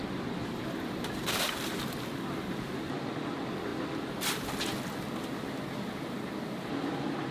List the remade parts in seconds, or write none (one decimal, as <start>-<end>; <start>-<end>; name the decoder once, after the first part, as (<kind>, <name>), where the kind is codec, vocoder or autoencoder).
none